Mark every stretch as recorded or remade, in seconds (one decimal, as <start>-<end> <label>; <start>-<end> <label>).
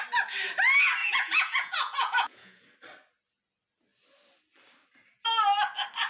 0.0-1.0 recorded; 1.0-2.6 remade; 2.6-6.1 recorded